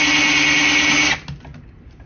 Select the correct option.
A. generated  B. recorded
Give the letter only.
B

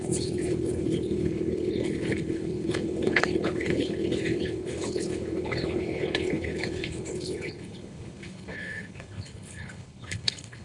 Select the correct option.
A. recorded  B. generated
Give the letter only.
B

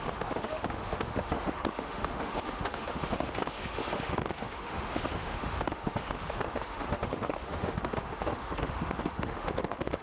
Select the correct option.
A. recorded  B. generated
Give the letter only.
B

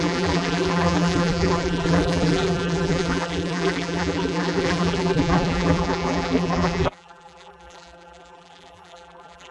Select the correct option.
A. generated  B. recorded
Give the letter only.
A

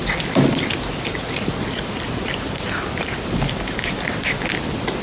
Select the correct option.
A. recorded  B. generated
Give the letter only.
A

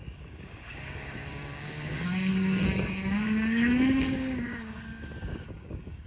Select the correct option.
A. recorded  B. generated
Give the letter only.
B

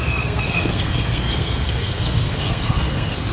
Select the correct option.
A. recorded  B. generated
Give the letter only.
B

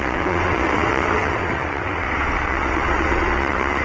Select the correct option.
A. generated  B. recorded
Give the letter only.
A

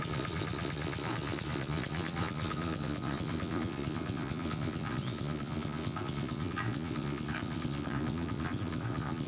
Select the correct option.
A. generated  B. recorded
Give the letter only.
A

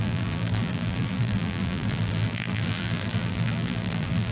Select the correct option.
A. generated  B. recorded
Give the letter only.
A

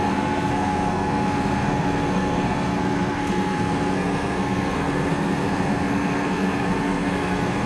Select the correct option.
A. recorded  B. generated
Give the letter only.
B